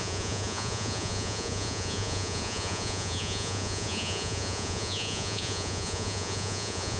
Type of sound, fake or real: fake